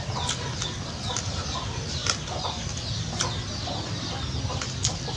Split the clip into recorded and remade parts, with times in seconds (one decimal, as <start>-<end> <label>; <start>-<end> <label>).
0.0-5.2 recorded